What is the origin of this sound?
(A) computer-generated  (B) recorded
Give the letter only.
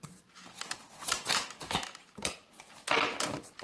B